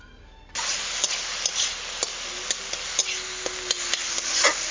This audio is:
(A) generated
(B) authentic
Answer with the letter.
B